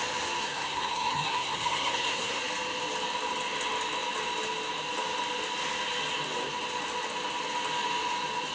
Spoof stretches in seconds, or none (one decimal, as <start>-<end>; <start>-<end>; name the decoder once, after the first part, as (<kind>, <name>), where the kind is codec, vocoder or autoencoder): 0.4-2.4 (codec, SNAC)